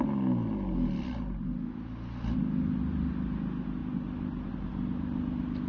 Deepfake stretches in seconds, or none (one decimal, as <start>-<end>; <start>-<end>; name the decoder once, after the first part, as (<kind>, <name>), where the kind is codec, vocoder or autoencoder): none